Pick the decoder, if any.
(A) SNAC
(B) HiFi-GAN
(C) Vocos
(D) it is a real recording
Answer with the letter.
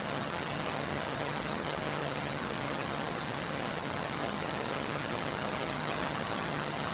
B